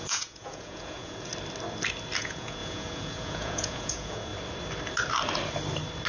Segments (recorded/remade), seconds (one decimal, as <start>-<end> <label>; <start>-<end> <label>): 0.0-1.3 remade; 1.3-2.2 recorded; 2.2-4.3 remade; 4.3-6.1 recorded